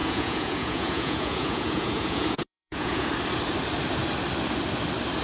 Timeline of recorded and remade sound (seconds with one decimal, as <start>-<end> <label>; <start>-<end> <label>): 0.0-3.1 remade; 3.1-5.2 recorded

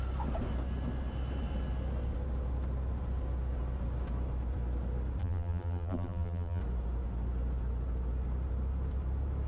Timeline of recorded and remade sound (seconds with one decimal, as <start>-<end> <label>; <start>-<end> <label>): 0.0-5.2 recorded; 5.2-6.6 remade; 6.6-9.5 recorded

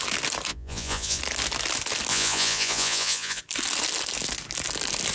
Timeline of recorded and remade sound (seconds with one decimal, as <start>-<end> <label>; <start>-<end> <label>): 0.0-0.5 recorded; 0.5-1.2 remade; 1.2-2.1 recorded; 2.1-3.4 remade; 3.4-5.1 recorded

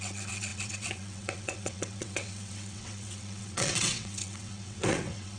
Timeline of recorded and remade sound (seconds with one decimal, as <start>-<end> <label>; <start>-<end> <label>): 0.0-5.4 remade

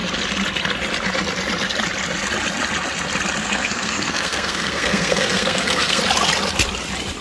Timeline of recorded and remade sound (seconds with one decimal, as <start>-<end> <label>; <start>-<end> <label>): 0.0-3.4 recorded; 3.4-6.0 remade; 6.0-7.2 recorded

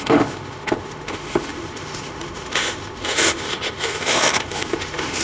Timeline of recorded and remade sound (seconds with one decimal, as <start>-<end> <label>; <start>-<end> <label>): 0.0-5.2 remade